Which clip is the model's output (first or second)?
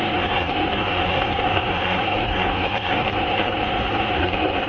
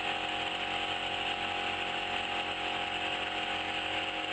first